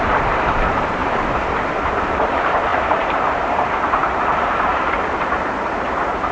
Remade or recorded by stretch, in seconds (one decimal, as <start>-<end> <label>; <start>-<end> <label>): 0.0-1.0 remade; 1.0-1.8 recorded; 1.8-6.3 remade